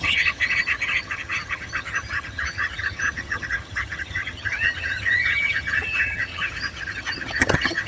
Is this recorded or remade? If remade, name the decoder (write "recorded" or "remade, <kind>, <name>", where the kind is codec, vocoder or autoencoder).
remade, vocoder, HiFi-GAN